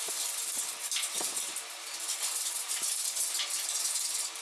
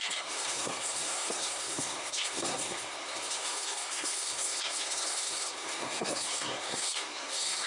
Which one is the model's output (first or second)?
second